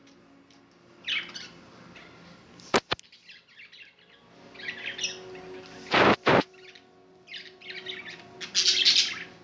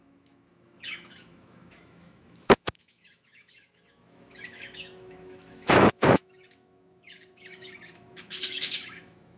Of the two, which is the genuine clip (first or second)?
first